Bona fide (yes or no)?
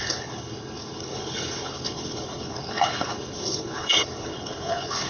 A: no